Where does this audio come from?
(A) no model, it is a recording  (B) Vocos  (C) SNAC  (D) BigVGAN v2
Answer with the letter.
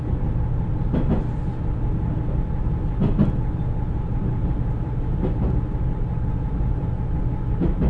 A